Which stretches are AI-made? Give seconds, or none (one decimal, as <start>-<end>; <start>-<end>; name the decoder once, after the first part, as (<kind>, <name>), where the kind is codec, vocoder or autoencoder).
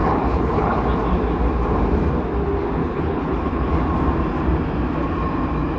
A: 0.0-0.8 (codec, HILCodec); 2.8-3.7